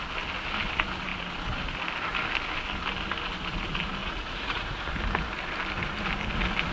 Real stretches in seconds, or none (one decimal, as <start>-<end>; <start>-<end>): 0.0-4.0; 4.8-6.7